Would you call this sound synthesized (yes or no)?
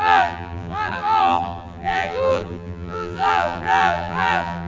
yes